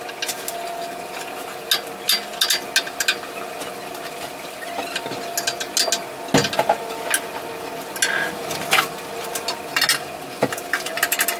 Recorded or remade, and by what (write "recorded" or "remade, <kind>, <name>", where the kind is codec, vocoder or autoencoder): recorded